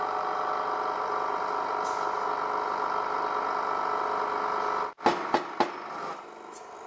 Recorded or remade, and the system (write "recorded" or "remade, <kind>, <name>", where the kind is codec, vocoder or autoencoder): recorded